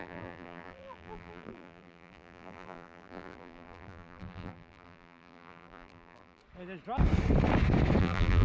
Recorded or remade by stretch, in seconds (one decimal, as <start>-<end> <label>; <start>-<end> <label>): 0.0-6.4 remade; 6.4-8.0 recorded; 8.0-8.4 remade